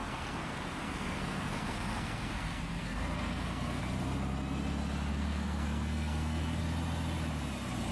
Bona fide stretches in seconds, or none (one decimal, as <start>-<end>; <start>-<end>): 3.8-5.1; 6.6-7.9

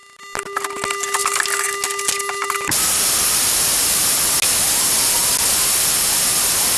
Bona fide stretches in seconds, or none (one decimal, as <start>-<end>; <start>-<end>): 0.0-6.8